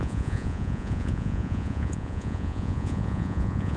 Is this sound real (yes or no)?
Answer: no